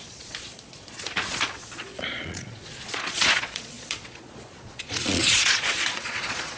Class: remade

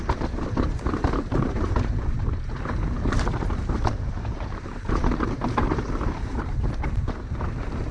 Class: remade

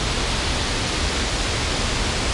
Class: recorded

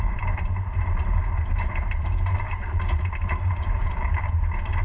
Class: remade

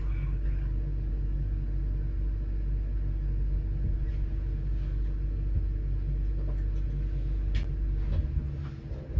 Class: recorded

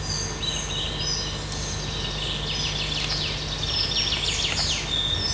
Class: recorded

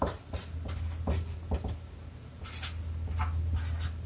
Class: recorded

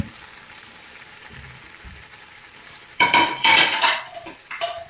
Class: remade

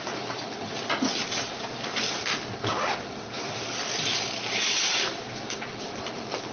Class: recorded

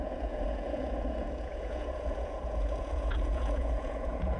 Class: remade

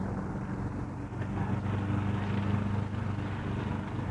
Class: recorded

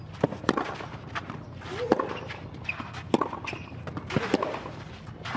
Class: recorded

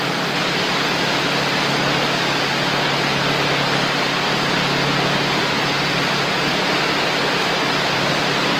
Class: recorded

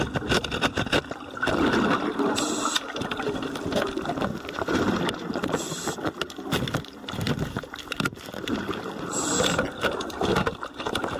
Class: recorded